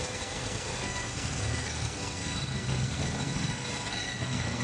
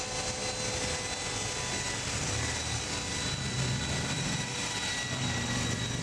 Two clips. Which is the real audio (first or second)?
second